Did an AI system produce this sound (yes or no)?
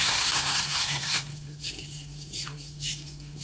yes